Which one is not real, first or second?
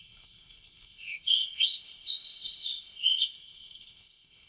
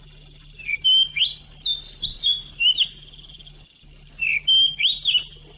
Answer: first